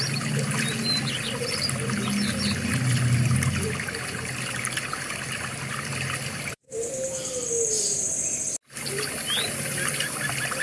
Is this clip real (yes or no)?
yes